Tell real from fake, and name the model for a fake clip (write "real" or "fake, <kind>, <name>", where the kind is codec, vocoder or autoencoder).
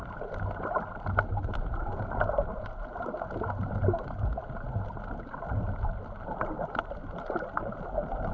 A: real